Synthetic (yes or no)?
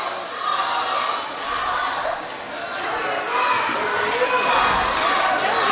no